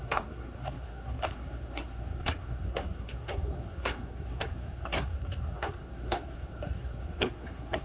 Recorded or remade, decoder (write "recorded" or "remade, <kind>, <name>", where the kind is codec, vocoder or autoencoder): remade, codec, SNAC